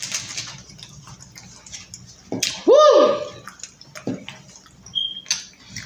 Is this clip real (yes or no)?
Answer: yes